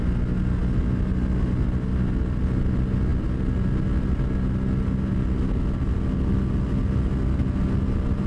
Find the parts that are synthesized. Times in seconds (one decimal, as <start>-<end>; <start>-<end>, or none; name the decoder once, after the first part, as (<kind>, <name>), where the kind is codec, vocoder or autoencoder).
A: none

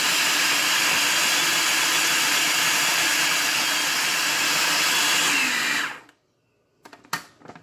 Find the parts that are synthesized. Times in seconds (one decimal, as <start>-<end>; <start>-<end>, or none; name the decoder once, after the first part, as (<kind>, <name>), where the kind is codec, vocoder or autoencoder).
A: none

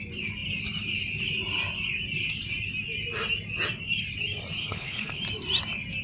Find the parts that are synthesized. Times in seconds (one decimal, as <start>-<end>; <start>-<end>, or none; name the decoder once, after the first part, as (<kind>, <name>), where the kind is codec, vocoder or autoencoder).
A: 4.6-5.2 (codec, HILCodec)